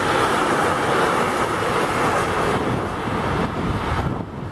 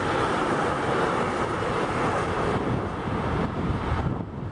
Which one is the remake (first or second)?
second